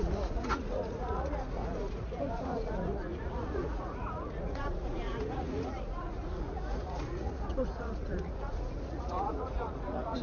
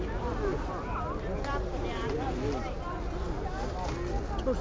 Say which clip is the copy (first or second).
first